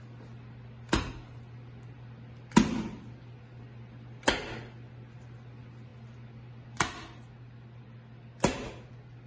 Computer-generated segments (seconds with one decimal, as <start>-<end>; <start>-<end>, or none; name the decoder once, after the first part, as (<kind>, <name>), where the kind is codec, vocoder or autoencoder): none